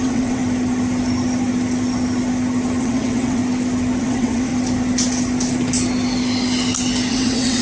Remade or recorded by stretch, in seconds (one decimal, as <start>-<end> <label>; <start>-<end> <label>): 0.0-0.4 remade; 0.4-2.8 recorded; 2.8-3.4 remade; 3.4-4.0 recorded; 4.0-4.5 remade; 4.5-7.1 recorded; 7.1-7.6 remade